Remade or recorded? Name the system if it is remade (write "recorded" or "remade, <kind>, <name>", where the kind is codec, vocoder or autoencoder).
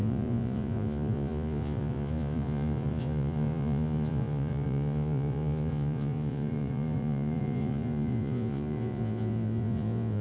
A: remade, vocoder, Vocos